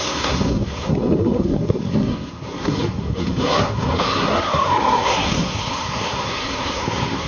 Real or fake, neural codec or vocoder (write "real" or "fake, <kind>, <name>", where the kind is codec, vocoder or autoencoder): fake, codec, SNAC